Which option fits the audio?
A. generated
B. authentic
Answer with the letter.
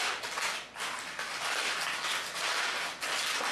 B